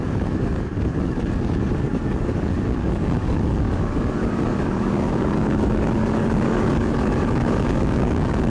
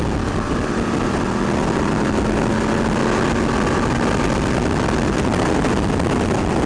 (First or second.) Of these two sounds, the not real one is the first